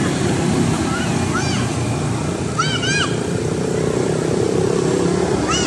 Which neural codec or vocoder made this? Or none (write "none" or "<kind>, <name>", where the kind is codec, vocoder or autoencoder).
none